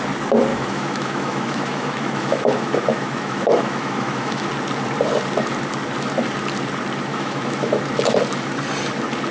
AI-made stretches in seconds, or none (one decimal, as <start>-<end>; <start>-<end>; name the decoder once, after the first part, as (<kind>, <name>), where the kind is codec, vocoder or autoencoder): 0.5-4.5 (autoencoder, DAC-VAE); 7.1-7.8